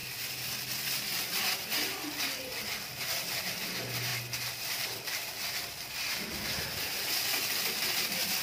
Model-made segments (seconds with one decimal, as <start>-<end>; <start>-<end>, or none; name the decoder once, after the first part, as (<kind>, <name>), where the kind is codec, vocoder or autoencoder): 4.1-5.3 (vocoder, BigVGAN v2)